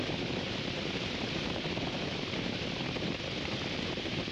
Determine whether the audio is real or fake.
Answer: fake